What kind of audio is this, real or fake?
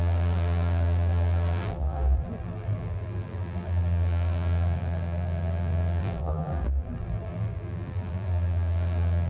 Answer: fake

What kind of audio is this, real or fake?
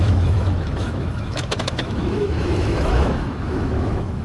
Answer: fake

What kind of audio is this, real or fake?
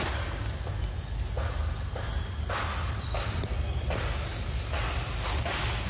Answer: real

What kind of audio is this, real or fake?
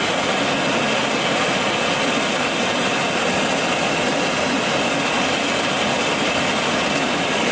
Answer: real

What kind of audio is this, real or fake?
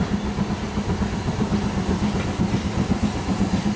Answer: real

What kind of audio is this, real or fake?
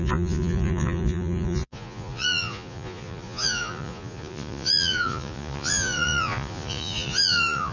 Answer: fake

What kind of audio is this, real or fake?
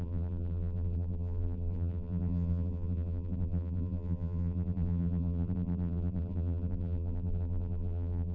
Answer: fake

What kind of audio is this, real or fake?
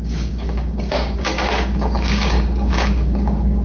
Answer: fake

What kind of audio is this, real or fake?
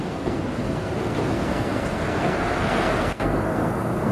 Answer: fake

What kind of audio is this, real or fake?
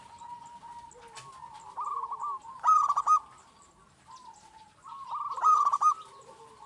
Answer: real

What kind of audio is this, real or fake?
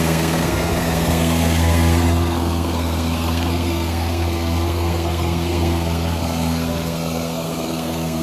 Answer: fake